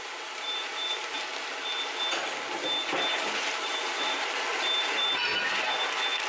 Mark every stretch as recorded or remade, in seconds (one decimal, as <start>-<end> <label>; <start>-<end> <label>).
0.0-1.3 remade; 1.3-3.5 recorded; 3.5-5.3 remade; 5.3-6.3 recorded